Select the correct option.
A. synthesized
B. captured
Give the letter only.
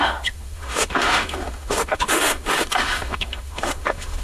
A